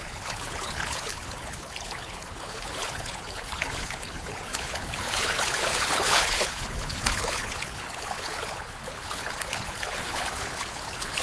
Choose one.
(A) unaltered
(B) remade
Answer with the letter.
B